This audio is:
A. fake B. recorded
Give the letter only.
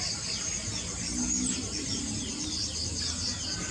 B